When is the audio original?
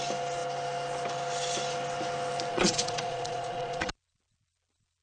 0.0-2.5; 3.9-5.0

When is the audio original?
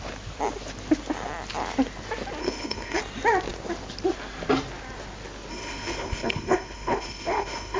0.0-2.4; 3.0-5.5